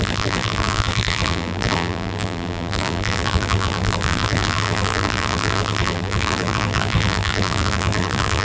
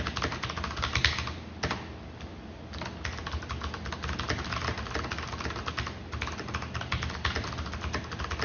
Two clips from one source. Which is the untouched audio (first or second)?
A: second